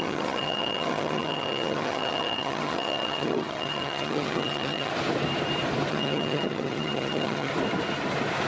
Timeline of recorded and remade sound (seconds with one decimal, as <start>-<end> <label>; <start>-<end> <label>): 0.0-4.9 remade; 4.9-5.9 recorded; 5.9-7.5 remade; 7.5-8.5 recorded